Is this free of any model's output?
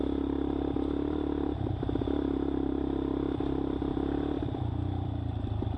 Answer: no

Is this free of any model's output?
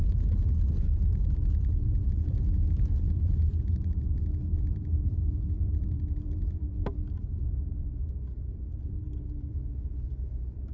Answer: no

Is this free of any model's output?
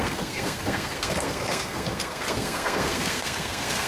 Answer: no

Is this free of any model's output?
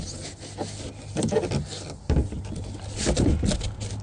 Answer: yes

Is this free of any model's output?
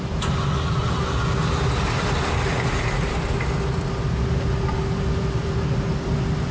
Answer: yes